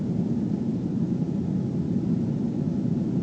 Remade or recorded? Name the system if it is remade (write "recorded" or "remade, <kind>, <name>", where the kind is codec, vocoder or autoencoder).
recorded